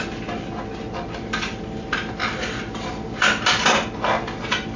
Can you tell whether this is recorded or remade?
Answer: recorded